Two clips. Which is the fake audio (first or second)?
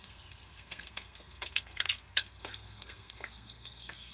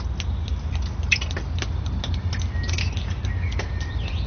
first